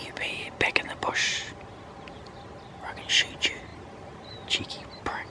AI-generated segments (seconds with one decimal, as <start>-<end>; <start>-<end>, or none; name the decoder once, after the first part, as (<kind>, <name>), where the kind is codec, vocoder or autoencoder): 0.0-1.4 (vocoder, BigVGAN v2); 2.9-5.3